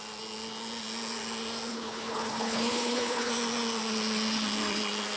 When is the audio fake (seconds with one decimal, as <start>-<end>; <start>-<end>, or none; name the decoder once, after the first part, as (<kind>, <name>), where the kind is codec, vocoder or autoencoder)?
1.7-3.3 (codec, HILCodec)

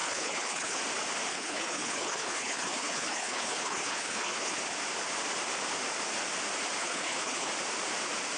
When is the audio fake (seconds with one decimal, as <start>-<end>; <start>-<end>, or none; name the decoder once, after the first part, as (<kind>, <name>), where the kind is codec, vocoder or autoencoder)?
0.0-0.8 (codec, HILCodec); 1.3-4.6; 6.8-7.5

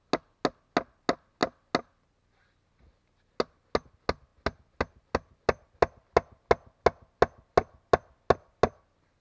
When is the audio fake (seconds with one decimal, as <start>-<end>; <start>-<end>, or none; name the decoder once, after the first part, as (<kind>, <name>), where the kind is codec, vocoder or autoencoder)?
none

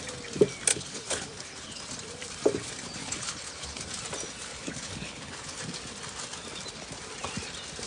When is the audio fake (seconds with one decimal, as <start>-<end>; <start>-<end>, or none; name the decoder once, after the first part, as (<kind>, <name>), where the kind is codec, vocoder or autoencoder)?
0.7-1.8 (codec, HILCodec); 3.0-3.8; 4.5-5.6